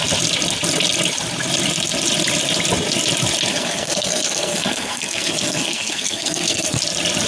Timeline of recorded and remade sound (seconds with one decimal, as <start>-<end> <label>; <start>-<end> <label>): 0.0-3.5 recorded; 3.5-6.8 remade; 6.8-7.3 recorded